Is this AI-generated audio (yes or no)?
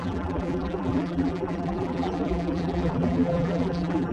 yes